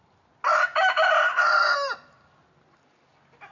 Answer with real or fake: real